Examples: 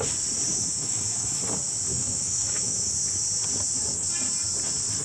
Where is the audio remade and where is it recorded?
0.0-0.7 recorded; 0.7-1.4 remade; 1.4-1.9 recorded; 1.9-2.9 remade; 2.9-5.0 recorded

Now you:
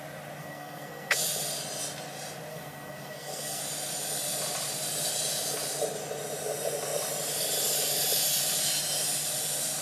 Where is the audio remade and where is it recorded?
0.0-0.4 recorded; 0.4-1.2 remade; 1.2-2.5 recorded; 2.5-3.6 remade; 3.6-9.8 recorded

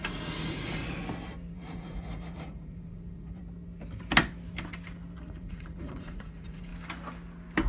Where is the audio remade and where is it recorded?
0.0-0.8 remade; 0.8-1.5 recorded; 1.5-3.4 remade; 3.4-5.2 recorded; 5.2-6.7 remade; 6.7-7.7 recorded

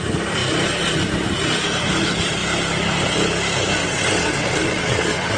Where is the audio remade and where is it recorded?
0.0-3.8 recorded; 3.8-5.4 remade

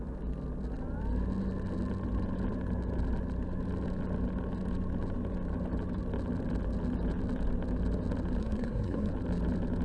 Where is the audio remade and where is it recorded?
0.0-8.4 recorded; 8.4-9.1 remade; 9.1-9.8 recorded

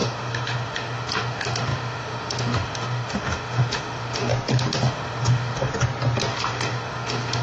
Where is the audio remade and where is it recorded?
0.0-4.3 remade; 4.3-4.8 recorded; 4.8-5.7 remade; 5.7-6.3 recorded; 6.3-7.4 remade